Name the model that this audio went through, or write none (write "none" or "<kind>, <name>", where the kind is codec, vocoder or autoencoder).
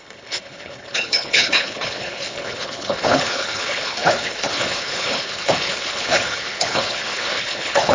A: codec, HILCodec